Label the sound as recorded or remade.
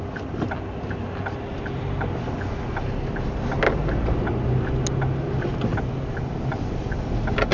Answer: recorded